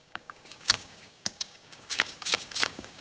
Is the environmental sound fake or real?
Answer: fake